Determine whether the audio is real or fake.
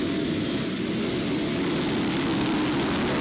real